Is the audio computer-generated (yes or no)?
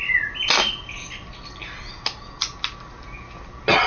no